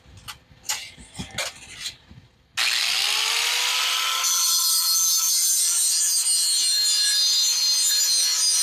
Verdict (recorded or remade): recorded